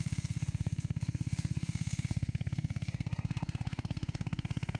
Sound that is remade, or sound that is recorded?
remade